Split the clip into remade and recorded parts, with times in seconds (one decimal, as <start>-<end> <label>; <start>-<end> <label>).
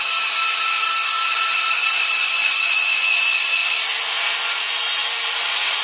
0.0-2.4 recorded; 2.4-3.2 remade; 3.2-5.8 recorded